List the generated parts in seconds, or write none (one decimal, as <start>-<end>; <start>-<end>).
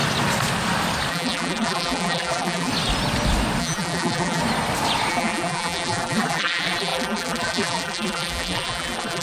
1.1-2.7; 3.6-4.4; 5.1-9.2